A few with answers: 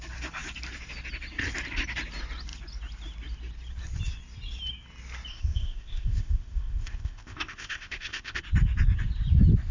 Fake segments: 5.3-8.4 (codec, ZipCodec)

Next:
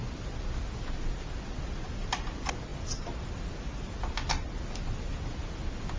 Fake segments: none

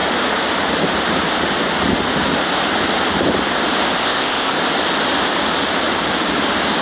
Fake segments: 4.0-4.5 (codec, ZipCodec)

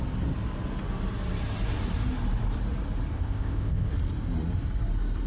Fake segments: 3.1-3.9 (codec, ZipCodec)

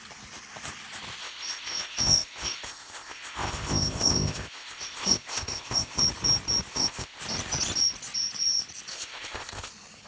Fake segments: 1.2-6.0 (codec, ZipCodec); 6.7-7.2; 8.9-9.7

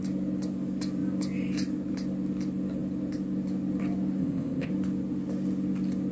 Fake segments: 4.2-4.7 (codec, ZipCodec)

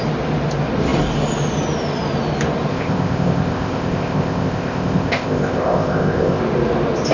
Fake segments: 2.7-6.4 (codec, ZipCodec)